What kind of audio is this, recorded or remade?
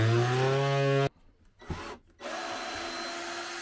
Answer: recorded